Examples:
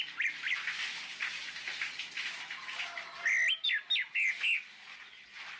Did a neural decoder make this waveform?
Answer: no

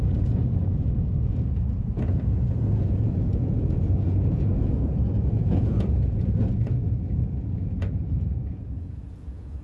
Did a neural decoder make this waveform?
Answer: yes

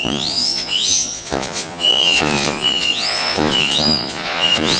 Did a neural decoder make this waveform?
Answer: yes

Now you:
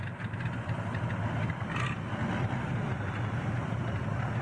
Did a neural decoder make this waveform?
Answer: no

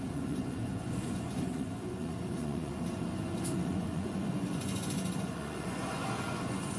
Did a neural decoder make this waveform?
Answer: yes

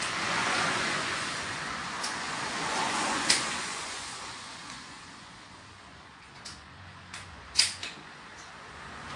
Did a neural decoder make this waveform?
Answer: yes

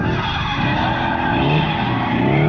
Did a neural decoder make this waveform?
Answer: no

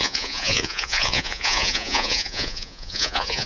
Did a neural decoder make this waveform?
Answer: yes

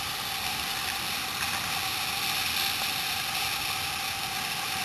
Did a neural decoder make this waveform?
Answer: no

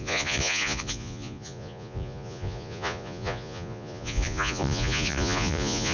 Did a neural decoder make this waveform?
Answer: yes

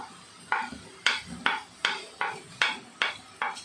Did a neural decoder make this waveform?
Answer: no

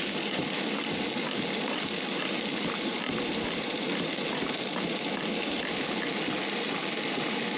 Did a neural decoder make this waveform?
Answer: no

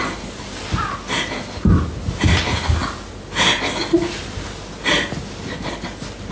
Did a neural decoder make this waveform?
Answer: no